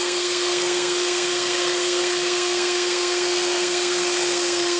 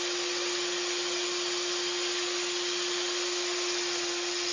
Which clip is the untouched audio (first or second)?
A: second